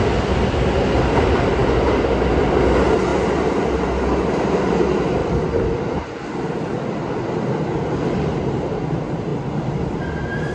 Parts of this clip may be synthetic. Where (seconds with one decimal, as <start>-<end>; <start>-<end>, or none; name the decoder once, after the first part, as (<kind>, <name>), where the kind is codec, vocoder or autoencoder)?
5.2-7.4 (vocoder, BigVGAN v2)